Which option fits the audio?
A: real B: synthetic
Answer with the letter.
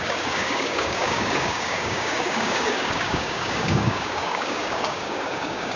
B